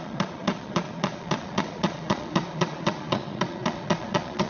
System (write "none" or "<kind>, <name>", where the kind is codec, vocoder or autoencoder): vocoder, Vocos